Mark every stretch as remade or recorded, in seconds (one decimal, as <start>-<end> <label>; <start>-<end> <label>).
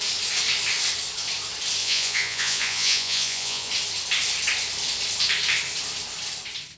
0.0-1.8 recorded; 1.8-3.7 remade; 3.7-6.8 recorded